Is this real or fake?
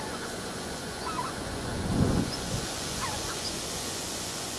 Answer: fake